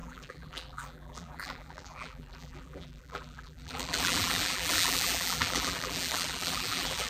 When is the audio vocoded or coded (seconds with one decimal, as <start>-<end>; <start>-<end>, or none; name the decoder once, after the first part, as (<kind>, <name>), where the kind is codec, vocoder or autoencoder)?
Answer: 0.0-7.1 (vocoder, BigVGAN v2)